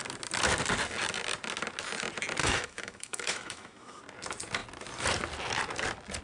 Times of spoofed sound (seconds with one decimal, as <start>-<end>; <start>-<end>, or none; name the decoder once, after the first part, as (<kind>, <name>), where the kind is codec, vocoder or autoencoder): 2.4-4.0 (autoencoder, DAC-VAE)